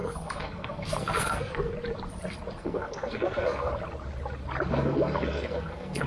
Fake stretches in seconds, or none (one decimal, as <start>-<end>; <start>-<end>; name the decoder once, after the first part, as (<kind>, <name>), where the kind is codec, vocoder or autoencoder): 0.0-1.7 (codec, SNAC); 2.6-3.7; 4.7-6.1